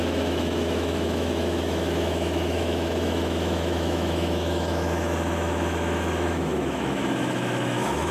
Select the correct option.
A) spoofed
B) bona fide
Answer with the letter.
A